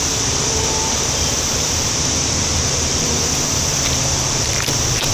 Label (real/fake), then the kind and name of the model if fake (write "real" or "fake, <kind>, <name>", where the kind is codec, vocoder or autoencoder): fake, vocoder, BigVGAN v2